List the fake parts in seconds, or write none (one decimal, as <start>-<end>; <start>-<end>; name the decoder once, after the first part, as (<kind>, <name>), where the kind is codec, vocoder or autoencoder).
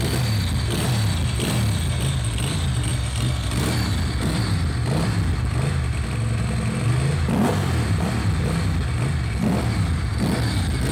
none